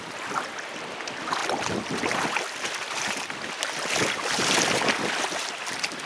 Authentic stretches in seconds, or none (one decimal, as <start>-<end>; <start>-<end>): 0.0-1.4; 5.1-6.1